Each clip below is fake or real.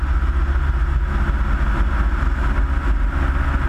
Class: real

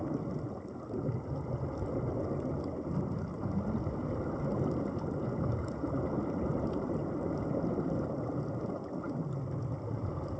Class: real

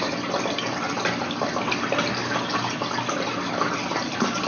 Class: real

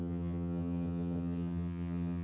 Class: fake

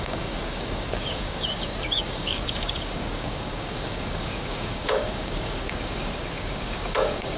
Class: fake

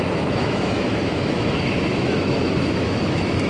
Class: fake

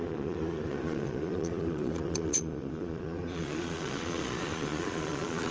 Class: fake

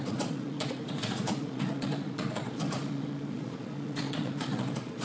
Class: fake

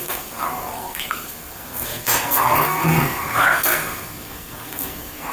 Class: fake